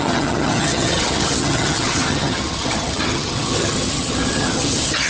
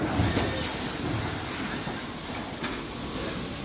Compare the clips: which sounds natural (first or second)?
second